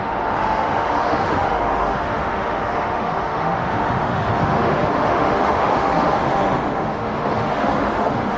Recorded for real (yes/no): no